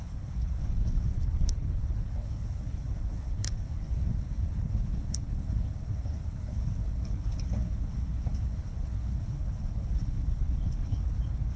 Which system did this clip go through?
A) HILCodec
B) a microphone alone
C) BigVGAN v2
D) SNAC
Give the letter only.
A